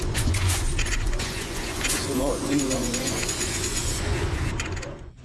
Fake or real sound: fake